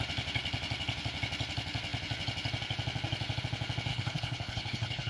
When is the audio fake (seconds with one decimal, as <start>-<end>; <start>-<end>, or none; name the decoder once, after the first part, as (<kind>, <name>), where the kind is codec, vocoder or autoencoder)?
3.9-5.1 (codec, HILCodec)